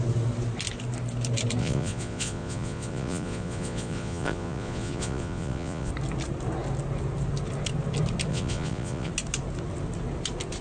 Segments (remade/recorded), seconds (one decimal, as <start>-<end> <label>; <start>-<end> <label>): 0.0-1.6 recorded; 1.6-5.9 remade; 5.9-8.3 recorded; 8.3-9.1 remade; 9.1-10.6 recorded